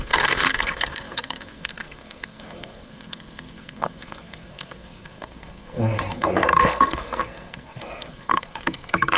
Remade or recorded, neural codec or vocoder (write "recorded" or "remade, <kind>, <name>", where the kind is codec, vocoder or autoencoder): remade, codec, SNAC